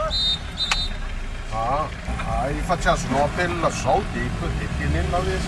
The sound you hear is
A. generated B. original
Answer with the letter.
B